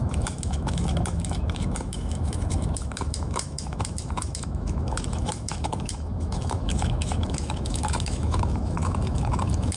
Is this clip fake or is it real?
fake